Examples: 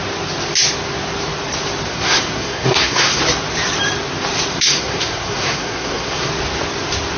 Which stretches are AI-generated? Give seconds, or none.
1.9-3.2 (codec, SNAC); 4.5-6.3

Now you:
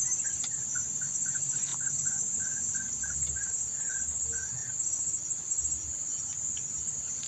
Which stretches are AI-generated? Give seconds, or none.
1.7-3.5 (vocoder, BigVGAN v2)

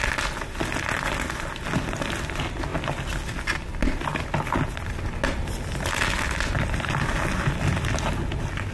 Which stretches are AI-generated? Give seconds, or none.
none

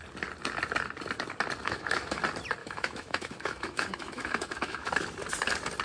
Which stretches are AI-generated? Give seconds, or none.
1.6-2.2 (autoencoder, DAC-VAE); 2.6-4.9

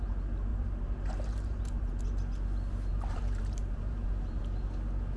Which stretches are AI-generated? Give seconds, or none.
0.5-1.9 (vocoder, BigVGAN v2); 2.9-4.4

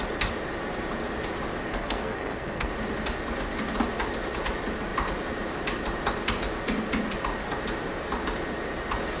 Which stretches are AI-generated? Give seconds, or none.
1.7-2.7 (codec, SNAC)

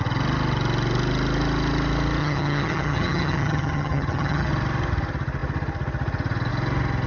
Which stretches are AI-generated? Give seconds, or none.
2.2-4.5 (vocoder, HiFi-GAN)

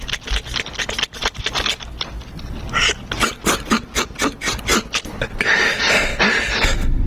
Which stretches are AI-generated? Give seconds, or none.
4.7-5.6 (vocoder, BigVGAN v2)